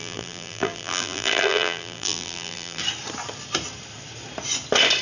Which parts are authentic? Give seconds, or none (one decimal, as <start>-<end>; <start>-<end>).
2.8-5.0